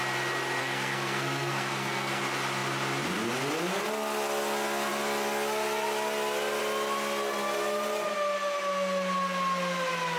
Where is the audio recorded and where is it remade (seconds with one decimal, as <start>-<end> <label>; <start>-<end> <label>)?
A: 0.0-0.6 recorded; 0.6-2.2 remade; 2.2-10.2 recorded